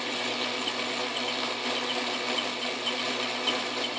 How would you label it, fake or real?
real